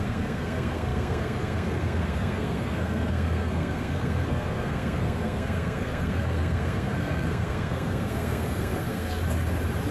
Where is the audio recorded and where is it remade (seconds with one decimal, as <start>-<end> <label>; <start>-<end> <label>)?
0.0-9.2 remade; 9.2-9.9 recorded